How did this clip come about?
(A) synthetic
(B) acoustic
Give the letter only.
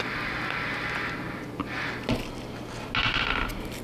B